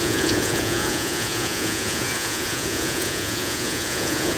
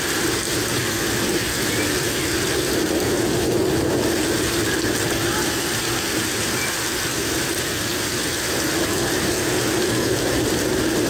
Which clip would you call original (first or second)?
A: second